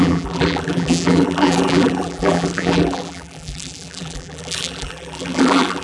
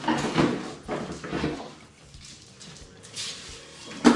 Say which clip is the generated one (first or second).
first